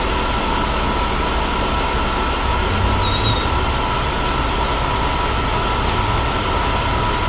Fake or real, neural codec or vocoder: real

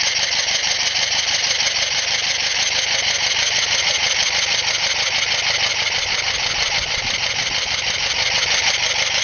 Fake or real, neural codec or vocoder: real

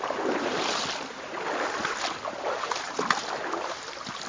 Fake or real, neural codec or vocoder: real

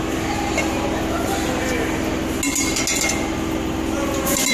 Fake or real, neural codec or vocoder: real